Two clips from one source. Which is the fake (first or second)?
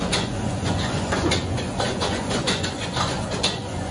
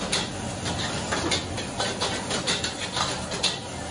first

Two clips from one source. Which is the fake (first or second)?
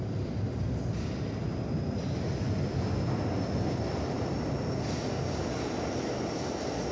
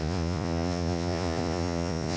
second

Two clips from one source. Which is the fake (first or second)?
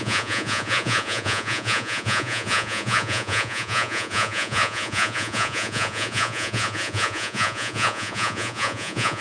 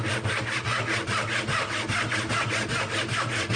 first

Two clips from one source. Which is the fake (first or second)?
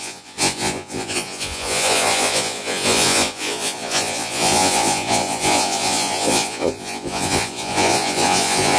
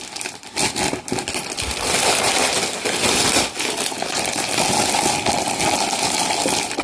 first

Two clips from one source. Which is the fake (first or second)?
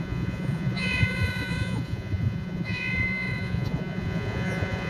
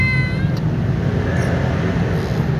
first